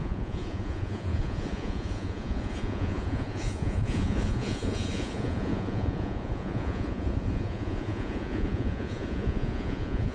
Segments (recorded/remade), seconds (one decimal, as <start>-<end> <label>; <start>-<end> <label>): 0.0-10.1 remade